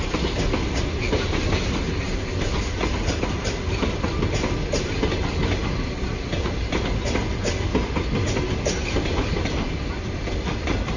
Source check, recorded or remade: recorded